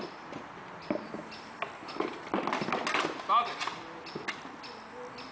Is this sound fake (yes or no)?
no